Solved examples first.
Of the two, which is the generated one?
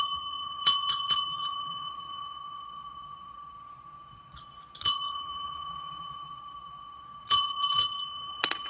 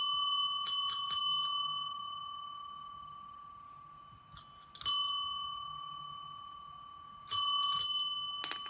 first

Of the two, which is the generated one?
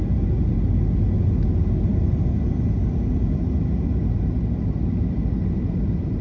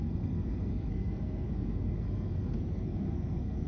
second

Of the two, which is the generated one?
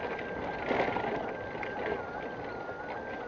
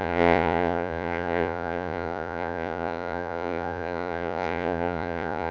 second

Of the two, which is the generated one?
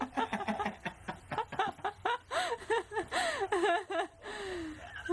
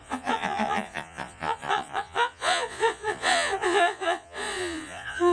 second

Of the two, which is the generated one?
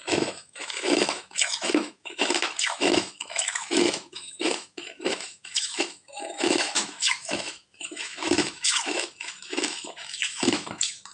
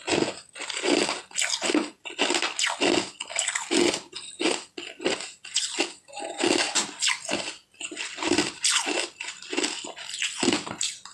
first